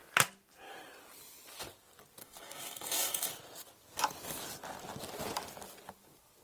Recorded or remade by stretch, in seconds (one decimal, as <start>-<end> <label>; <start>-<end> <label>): 0.0-2.2 recorded; 2.2-3.3 remade; 3.3-6.4 recorded